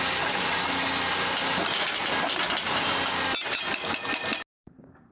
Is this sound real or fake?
real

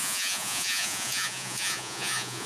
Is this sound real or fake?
fake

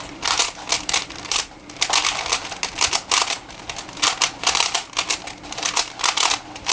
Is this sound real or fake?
real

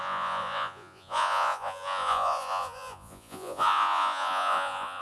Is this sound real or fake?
fake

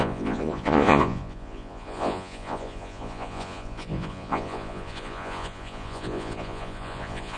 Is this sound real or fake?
fake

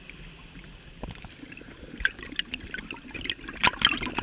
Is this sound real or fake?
real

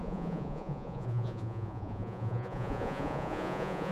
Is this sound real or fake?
fake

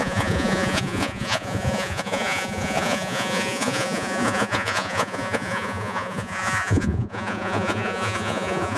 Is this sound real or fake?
fake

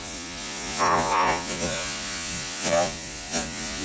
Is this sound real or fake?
fake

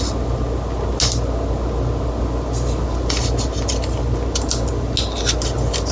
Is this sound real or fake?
real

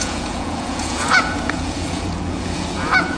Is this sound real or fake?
fake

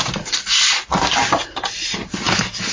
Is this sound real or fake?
real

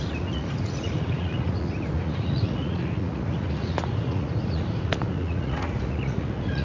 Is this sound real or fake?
fake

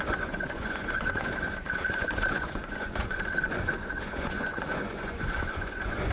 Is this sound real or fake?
fake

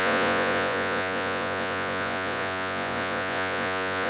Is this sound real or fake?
fake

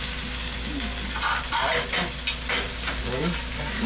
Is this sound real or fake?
real